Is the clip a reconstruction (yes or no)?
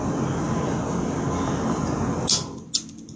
no